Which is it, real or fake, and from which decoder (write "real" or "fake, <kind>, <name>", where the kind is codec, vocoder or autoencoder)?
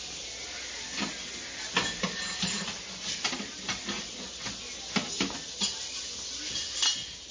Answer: real